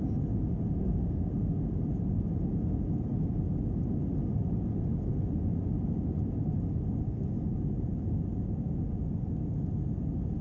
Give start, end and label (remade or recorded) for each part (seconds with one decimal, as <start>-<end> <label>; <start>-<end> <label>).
0.0-0.8 recorded; 0.8-1.6 remade; 1.6-10.4 recorded